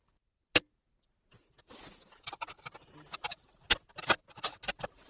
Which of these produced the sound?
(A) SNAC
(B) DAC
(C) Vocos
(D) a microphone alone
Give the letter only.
D